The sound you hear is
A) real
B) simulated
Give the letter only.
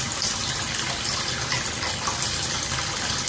A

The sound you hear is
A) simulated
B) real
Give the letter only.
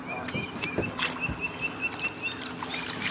B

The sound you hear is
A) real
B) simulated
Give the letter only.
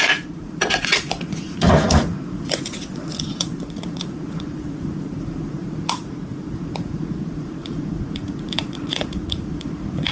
B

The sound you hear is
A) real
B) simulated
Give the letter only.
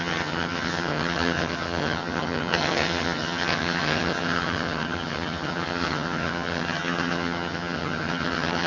B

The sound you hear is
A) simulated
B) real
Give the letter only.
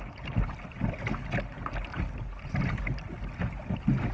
B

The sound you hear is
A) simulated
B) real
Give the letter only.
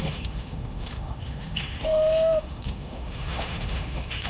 A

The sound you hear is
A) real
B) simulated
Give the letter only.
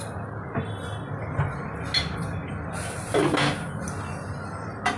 A